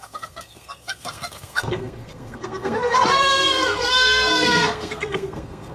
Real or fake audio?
fake